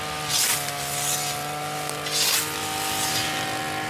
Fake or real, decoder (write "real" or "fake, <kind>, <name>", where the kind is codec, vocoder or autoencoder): real